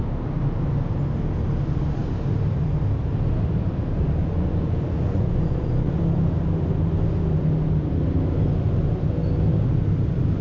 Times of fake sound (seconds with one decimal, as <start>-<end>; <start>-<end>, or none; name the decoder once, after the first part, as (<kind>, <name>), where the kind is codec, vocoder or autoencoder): 4.2-6.0 (vocoder, Vocos)

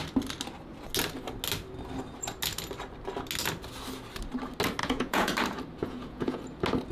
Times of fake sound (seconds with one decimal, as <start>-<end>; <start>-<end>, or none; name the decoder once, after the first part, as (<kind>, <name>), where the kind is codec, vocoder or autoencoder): 4.8-5.3 (vocoder, Vocos); 5.8-6.4

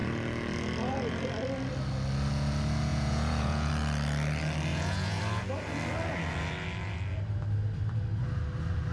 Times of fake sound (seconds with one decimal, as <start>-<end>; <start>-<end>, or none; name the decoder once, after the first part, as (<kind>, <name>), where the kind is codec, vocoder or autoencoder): 2.9-3.7 (vocoder, Vocos); 4.7-5.2

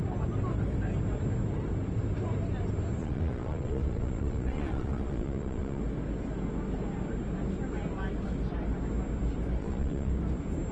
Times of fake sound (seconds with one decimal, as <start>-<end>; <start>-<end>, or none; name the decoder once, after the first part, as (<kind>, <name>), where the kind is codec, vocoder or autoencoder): 3.0-5.8 (vocoder, Vocos); 9.6-10.1

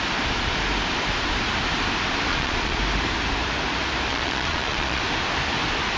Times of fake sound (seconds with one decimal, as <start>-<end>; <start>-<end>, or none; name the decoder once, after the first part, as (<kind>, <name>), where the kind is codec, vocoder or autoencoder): 2.3-2.8 (vocoder, Vocos); 4.1-5.0

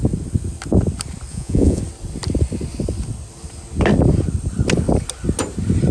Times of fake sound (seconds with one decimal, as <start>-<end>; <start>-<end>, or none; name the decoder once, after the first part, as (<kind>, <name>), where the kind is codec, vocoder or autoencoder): 1.3-1.8 (vocoder, Vocos)